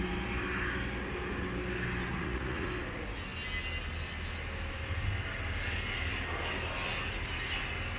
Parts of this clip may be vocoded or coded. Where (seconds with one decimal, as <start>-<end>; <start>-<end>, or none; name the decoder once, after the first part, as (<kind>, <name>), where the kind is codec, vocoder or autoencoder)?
2.1-2.7 (vocoder, Vocos)